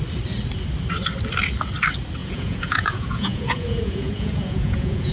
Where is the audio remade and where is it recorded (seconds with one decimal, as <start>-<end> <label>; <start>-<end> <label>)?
0.0-2.2 recorded; 2.2-5.1 remade

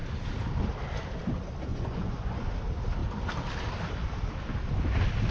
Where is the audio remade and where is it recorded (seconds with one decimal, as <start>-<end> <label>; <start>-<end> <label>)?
0.0-1.7 recorded; 1.7-2.5 remade; 2.5-5.3 recorded

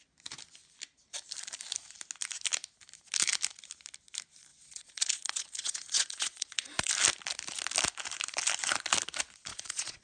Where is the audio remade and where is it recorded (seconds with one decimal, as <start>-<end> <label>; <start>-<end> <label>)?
0.0-4.5 recorded; 4.5-6.9 remade; 6.9-9.5 recorded; 9.5-10.0 remade

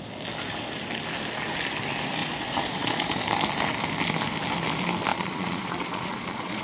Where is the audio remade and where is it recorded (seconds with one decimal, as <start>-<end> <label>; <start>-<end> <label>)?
0.0-2.2 recorded; 2.2-3.2 remade; 3.2-5.1 recorded; 5.1-6.6 remade

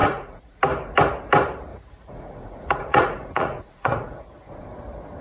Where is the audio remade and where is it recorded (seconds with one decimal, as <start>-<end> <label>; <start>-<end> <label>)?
0.0-0.6 remade; 0.6-1.7 recorded; 1.7-4.8 remade; 4.8-5.2 recorded

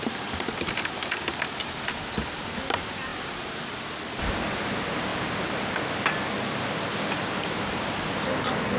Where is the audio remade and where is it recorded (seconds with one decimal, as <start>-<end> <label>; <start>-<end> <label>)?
0.0-8.8 recorded